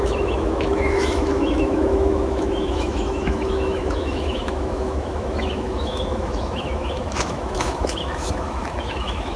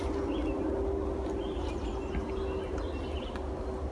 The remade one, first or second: first